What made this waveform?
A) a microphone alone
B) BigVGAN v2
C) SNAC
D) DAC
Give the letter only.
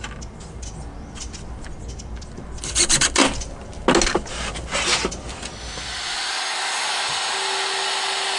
A